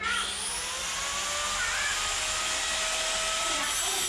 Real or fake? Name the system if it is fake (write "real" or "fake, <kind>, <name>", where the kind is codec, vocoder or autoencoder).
real